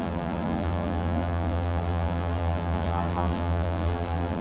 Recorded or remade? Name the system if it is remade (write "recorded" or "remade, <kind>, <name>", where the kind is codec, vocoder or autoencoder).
remade, vocoder, BigVGAN v2